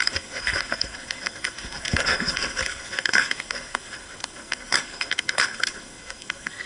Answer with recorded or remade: remade